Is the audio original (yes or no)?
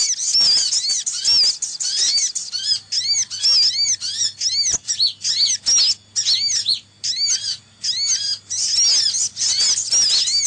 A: yes